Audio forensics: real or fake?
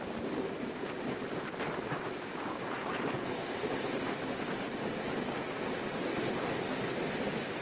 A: real